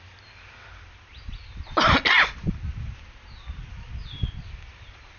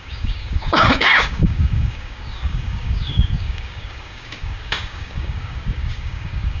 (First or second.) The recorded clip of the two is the first